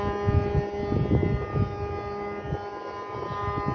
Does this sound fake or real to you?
real